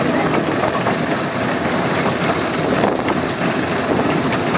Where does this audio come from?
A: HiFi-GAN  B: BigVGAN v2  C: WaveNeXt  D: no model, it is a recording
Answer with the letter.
D